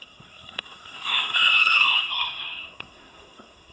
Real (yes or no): no